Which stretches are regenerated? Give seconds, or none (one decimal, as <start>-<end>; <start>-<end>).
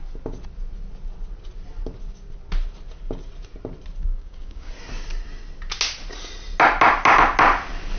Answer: 4.1-4.7